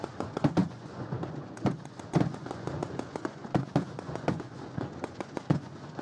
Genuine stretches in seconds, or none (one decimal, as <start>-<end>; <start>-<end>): none